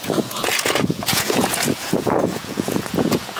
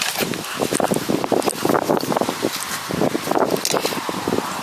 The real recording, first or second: second